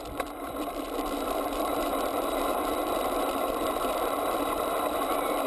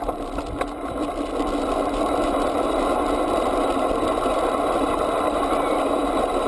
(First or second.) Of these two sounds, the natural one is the second